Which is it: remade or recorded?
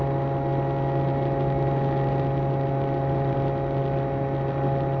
recorded